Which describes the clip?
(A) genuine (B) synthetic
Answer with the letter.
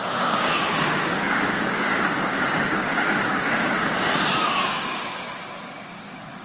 B